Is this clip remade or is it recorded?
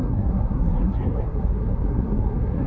remade